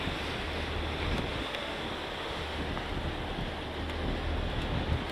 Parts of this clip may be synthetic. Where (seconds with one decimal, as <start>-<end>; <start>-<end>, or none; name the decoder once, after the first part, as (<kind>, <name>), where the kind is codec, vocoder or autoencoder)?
1.3-1.8 (autoencoder, DAC-VAE); 2.2-2.7